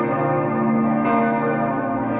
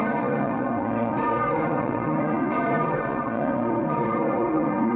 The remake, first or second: second